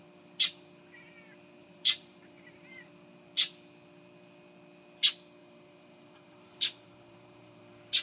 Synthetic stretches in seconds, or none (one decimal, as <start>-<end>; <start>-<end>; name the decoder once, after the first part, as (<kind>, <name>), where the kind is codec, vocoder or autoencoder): 1.6-2.9 (vocoder, BigVGAN v2); 5.4-7.6